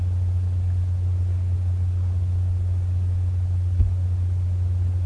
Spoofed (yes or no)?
no